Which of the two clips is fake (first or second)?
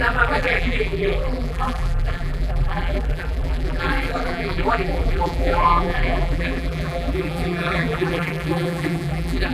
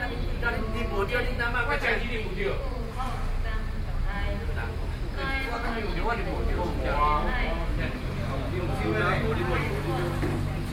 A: first